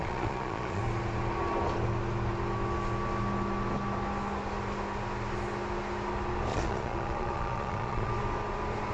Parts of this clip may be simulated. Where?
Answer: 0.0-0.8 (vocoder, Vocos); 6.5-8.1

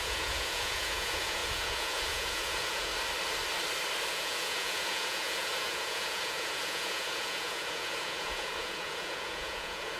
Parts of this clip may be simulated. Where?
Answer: 0.0-2.9 (vocoder, Vocos); 4.1-10.0

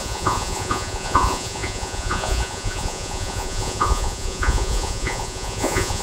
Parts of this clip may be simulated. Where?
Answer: 0.0-6.0 (vocoder, Vocos)

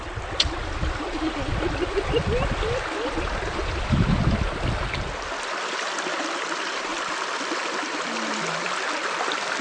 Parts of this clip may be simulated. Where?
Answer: none